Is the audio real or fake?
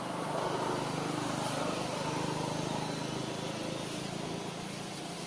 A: real